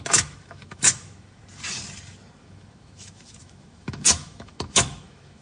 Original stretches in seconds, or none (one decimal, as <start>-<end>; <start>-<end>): 1.4-2.4